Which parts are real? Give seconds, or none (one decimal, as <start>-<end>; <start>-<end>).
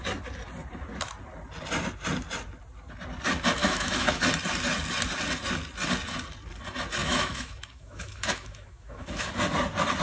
0.0-3.6; 4.2-7.0; 9.3-10.0